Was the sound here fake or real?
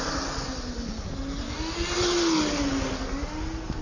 real